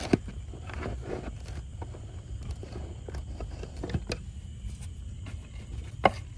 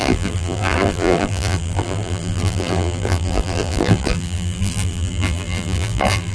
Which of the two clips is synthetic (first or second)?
second